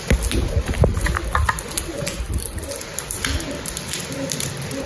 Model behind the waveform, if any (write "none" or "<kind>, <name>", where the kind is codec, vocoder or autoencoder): vocoder, BigVGAN v2